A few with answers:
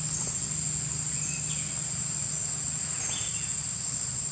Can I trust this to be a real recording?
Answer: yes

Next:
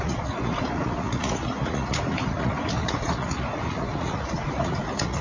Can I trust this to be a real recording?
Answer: no